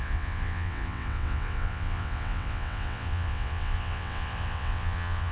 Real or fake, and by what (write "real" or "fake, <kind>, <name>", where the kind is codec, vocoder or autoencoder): fake, vocoder, WaveNeXt